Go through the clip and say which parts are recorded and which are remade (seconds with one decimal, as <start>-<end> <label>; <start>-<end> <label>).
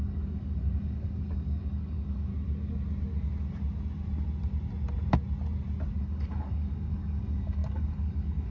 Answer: 0.0-2.3 remade; 2.3-6.0 recorded; 6.0-8.5 remade